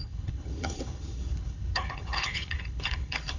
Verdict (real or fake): fake